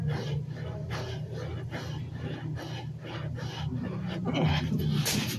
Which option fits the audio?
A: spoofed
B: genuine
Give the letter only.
B